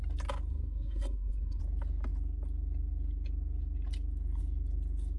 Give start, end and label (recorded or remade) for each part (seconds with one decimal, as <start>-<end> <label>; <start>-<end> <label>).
0.0-0.5 recorded; 0.5-1.6 remade; 1.6-5.2 recorded